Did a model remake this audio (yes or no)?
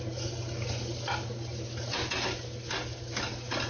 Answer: no